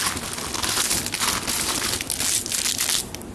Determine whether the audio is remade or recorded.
recorded